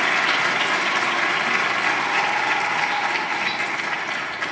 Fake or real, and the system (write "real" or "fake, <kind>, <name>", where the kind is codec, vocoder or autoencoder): real